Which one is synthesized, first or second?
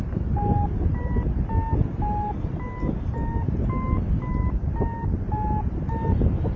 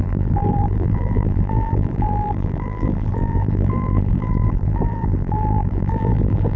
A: second